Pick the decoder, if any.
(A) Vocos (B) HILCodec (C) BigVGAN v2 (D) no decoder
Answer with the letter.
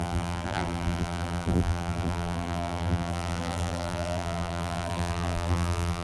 C